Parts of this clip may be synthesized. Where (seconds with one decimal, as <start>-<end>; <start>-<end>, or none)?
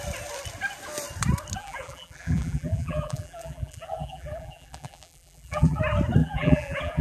1.6-5.8; 6.2-7.0